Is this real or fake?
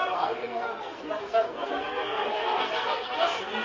fake